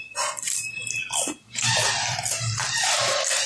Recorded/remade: recorded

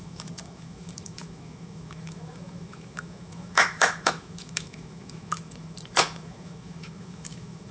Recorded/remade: remade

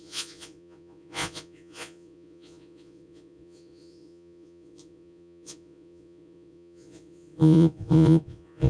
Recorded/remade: remade